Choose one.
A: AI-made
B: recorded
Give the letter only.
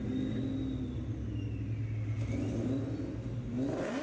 B